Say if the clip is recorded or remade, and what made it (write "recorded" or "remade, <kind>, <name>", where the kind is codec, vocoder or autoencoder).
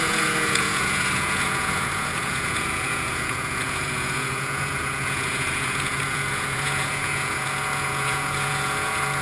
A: remade, vocoder, Vocos